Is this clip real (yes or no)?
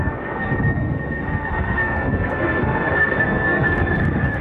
no